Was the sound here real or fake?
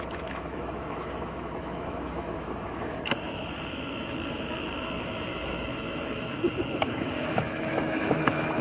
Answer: fake